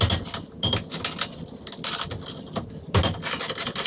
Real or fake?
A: real